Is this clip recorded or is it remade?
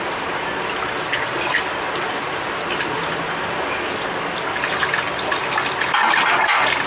recorded